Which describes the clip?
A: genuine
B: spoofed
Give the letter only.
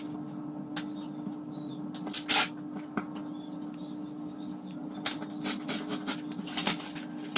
A